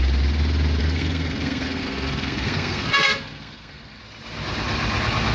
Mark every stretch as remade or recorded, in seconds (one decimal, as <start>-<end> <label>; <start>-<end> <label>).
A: 0.0-0.8 recorded; 0.8-4.0 remade; 4.0-5.3 recorded